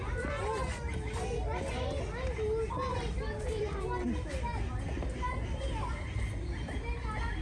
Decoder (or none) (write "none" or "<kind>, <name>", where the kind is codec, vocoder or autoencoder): none